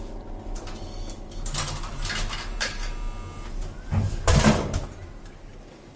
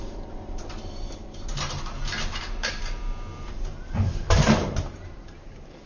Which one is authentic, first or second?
first